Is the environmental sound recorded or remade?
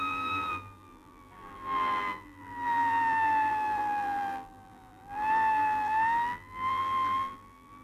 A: remade